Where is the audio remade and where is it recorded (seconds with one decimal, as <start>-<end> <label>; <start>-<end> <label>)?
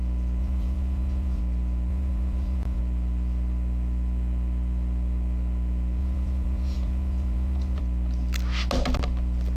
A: 0.0-0.4 recorded; 0.4-1.4 remade; 1.4-1.9 recorded; 1.9-2.8 remade; 2.8-6.0 recorded; 6.0-7.8 remade; 7.8-9.6 recorded